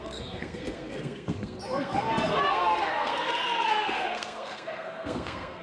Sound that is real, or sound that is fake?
fake